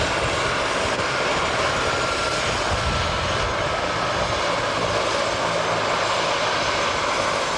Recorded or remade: recorded